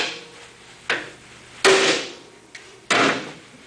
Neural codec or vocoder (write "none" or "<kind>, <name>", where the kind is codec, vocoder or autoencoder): none